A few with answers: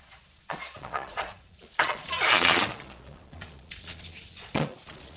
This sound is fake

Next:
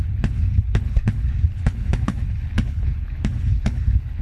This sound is fake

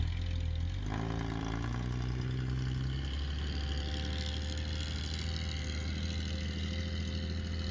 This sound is real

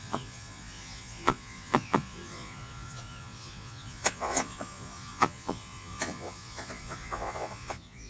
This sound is fake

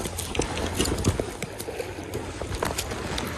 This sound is real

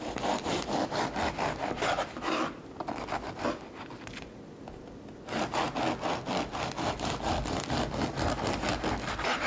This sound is real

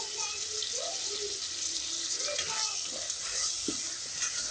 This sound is real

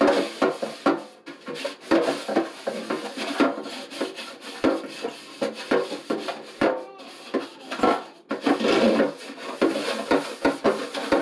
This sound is real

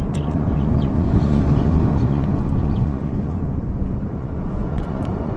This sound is fake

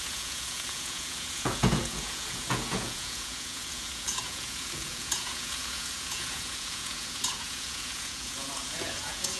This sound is fake